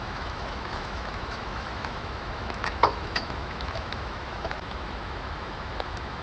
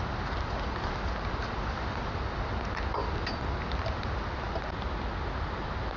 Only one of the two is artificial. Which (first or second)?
first